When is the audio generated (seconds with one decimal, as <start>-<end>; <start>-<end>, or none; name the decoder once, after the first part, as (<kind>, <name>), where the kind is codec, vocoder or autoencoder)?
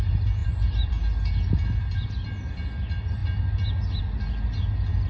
0.4-0.9 (vocoder, BigVGAN v2)